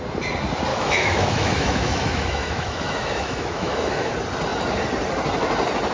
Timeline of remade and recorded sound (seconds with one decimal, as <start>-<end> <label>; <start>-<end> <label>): 0.0-0.7 recorded; 0.7-4.1 remade; 4.1-5.9 recorded